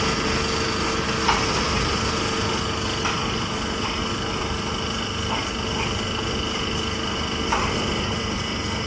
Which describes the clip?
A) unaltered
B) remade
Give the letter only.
A